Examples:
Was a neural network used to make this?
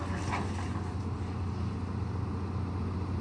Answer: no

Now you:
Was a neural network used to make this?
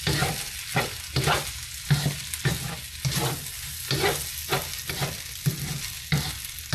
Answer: no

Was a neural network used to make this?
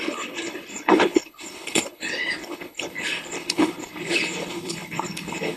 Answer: yes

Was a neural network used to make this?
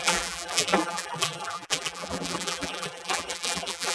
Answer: yes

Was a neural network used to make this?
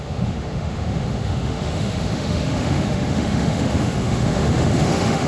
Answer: yes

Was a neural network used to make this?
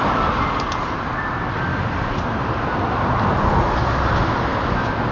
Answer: no